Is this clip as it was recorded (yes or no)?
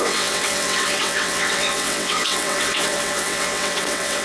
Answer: no